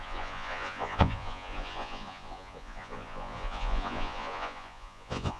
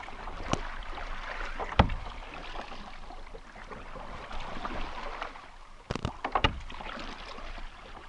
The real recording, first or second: second